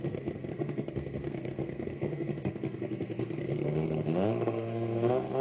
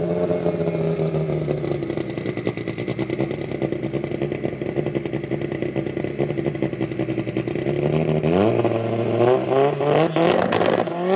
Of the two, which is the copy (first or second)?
first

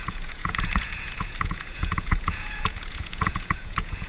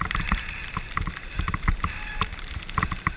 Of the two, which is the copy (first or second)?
first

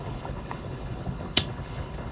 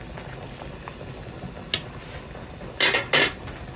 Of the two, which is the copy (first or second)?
first